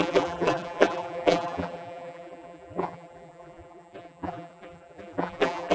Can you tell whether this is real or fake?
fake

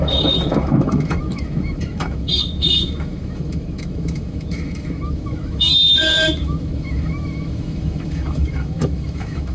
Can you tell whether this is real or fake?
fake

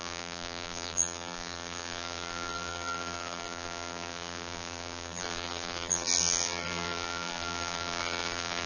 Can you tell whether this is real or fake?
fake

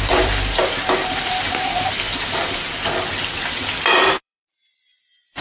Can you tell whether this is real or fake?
fake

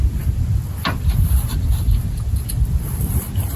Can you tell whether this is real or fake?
real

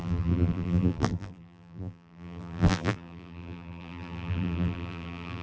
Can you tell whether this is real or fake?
fake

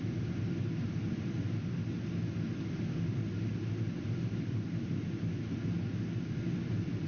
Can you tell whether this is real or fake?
real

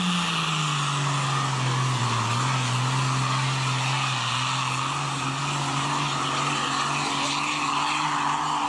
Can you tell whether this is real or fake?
real